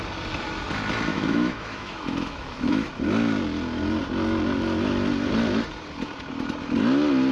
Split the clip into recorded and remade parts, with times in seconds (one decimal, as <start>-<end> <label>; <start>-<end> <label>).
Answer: 0.0-1.1 recorded; 1.1-2.9 remade; 2.9-7.3 recorded